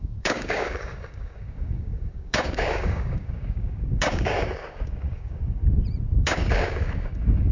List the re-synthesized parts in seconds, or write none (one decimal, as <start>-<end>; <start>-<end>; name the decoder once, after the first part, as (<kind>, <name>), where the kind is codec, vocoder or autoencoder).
0.0-5.6 (codec, DAC); 6.2-7.5